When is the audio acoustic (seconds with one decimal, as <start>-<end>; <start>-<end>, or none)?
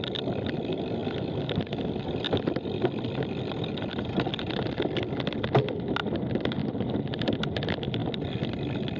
0.0-9.0